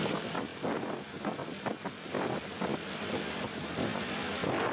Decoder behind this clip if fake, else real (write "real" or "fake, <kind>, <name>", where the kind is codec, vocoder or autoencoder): real